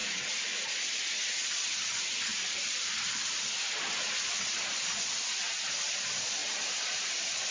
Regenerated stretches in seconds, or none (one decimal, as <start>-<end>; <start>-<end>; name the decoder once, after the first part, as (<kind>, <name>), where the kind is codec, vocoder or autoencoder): 0.0-1.0 (vocoder, BigVGAN v2); 2.3-3.4; 6.4-7.5